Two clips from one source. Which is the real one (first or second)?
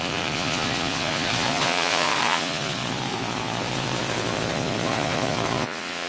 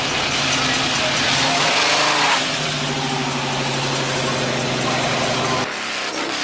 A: second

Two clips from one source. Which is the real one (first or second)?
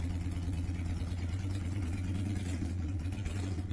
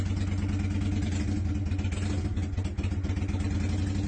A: second